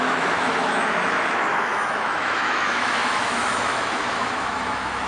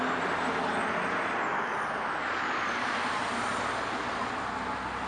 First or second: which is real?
second